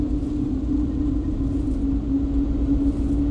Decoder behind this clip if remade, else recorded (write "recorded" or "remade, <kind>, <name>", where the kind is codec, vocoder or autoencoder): recorded